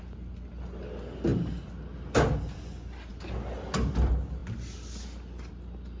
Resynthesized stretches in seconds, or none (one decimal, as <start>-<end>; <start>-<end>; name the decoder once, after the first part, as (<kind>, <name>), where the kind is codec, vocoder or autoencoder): none